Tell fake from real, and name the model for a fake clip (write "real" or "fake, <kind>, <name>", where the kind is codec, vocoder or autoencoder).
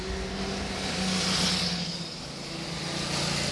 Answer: real